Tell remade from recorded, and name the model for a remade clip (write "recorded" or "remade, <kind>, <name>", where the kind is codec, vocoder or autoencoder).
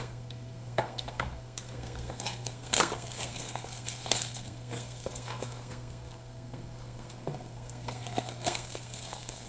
remade, codec, SNAC